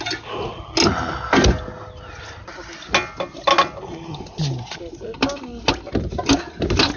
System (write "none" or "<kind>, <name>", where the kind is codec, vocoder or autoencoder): none